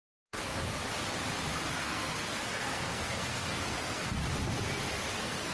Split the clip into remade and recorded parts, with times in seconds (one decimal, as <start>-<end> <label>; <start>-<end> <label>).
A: 0.0-0.5 remade; 0.5-1.7 recorded; 1.7-4.2 remade; 4.2-5.1 recorded; 5.1-5.5 remade